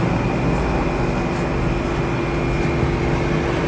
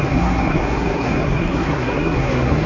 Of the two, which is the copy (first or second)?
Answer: second